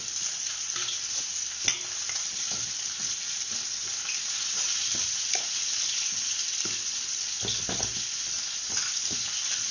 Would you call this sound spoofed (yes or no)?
no